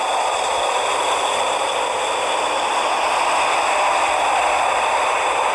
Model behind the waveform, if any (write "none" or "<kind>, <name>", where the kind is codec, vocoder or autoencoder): none